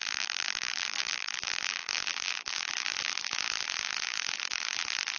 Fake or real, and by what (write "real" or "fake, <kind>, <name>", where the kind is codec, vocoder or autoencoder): fake, vocoder, BigVGAN v2